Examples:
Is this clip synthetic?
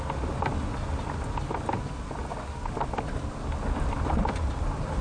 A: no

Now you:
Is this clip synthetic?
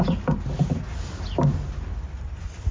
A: no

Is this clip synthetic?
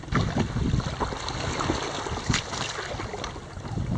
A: no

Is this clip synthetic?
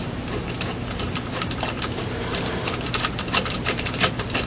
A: yes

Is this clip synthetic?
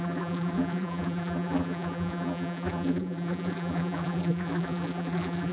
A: yes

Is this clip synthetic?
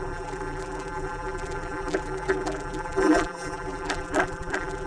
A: yes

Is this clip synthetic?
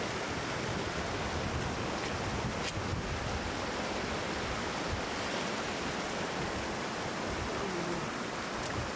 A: no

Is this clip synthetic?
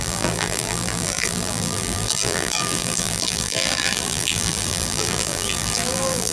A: yes